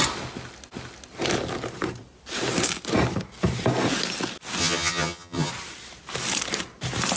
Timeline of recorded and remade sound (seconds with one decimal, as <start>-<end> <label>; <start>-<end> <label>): 0.0-4.6 recorded; 4.6-5.5 remade; 5.5-7.2 recorded